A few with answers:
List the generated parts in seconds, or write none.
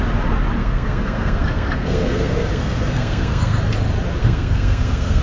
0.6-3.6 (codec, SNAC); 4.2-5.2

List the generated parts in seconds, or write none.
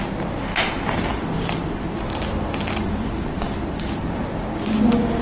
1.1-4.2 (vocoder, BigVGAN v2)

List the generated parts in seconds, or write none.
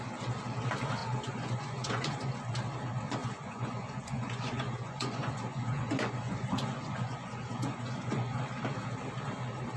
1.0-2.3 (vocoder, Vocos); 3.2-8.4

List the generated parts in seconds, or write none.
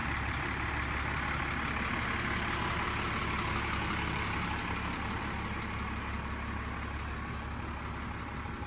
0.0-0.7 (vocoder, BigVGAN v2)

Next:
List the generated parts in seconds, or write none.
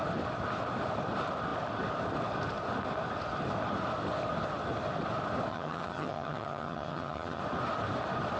5.5-7.4 (vocoder, HiFi-GAN)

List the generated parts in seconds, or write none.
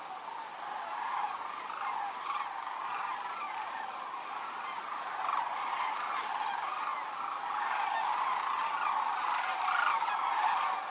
none